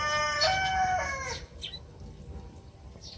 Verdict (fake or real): real